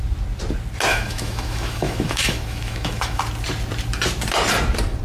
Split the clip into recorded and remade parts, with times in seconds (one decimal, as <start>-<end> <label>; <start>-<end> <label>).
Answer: 0.0-0.9 recorded; 0.9-3.2 remade; 3.2-5.0 recorded